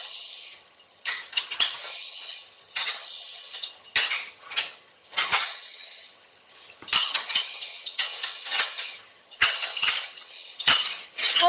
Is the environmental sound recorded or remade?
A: remade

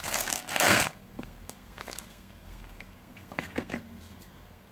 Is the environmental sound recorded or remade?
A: remade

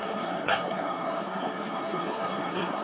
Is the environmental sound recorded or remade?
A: remade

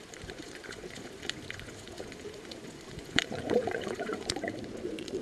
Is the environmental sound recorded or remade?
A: remade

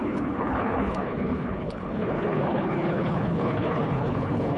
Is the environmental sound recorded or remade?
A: remade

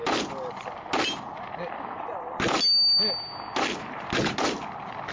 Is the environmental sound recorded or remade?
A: recorded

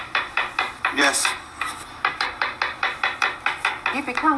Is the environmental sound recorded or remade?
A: recorded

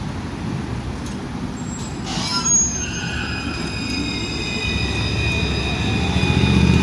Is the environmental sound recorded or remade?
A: recorded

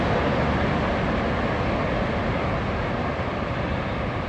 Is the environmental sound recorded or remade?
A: recorded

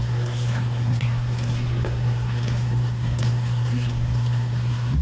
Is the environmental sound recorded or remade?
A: remade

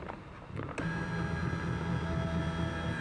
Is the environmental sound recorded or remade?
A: recorded